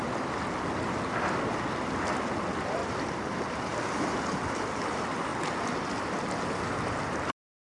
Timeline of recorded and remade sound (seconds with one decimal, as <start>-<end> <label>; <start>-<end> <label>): 0.0-2.8 recorded; 2.8-3.8 remade; 3.8-7.7 recorded